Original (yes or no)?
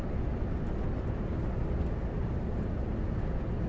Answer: yes